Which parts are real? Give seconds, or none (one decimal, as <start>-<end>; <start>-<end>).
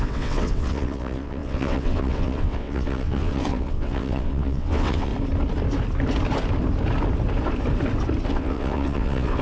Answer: 5.1-8.3